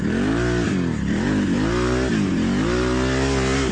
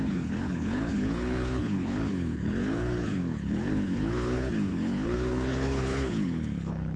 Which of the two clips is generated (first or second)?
second